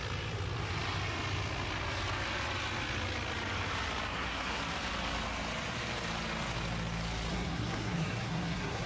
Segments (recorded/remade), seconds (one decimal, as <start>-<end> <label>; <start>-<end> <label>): 0.0-4.1 recorded; 4.1-4.6 remade; 4.6-7.3 recorded; 7.3-8.9 remade

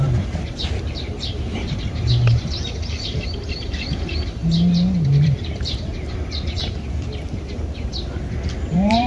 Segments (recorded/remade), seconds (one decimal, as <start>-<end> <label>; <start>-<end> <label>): 0.0-6.6 remade; 6.6-8.7 recorded; 8.7-9.1 remade

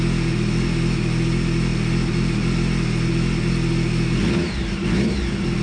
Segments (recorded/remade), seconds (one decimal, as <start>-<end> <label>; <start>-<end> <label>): 0.0-5.6 recorded

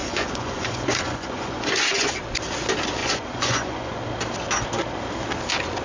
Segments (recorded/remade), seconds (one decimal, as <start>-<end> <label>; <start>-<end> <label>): 0.0-2.2 remade; 2.2-3.0 recorded; 3.0-4.0 remade; 4.0-5.8 recorded

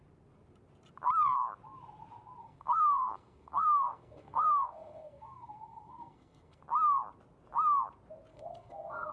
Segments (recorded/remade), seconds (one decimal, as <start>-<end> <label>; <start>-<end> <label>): 0.0-2.4 recorded; 2.4-6.6 remade; 6.6-8.3 recorded; 8.3-9.1 remade

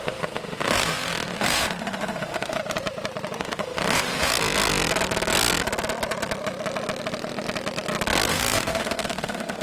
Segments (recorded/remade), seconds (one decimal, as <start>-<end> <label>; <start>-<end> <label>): 0.0-2.6 remade; 2.6-3.4 recorded; 3.4-4.3 remade; 4.3-8.3 recorded; 8.3-9.6 remade

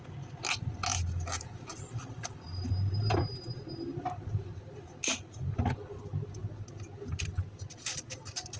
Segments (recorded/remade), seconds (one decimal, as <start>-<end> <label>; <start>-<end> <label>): 0.0-1.7 recorded; 1.7-2.7 remade; 2.7-8.6 recorded